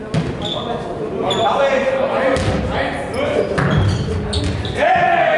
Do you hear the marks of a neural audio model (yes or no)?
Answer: no